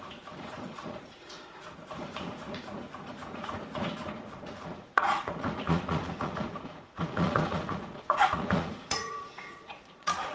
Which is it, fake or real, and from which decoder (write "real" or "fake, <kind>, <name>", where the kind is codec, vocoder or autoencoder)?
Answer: fake, vocoder, Vocos